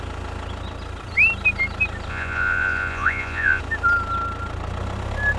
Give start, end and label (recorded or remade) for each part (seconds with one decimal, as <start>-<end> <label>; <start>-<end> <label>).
0.0-2.1 recorded; 2.1-3.6 remade; 3.6-5.4 recorded